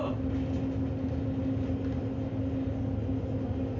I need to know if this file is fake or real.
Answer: real